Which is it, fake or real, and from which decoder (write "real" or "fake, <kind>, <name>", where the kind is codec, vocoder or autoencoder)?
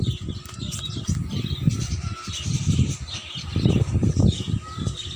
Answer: real